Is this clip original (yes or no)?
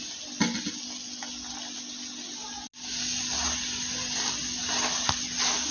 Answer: yes